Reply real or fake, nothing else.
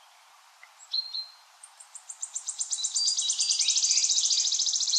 fake